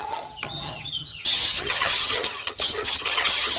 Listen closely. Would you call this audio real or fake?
fake